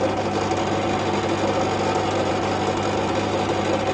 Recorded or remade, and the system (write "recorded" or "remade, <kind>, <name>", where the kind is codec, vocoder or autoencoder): recorded